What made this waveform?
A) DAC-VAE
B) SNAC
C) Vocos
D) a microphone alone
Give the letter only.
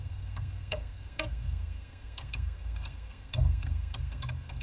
B